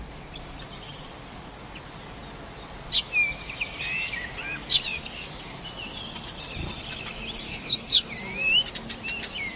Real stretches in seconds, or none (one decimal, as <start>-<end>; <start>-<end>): 0.0-7.5; 8.1-9.6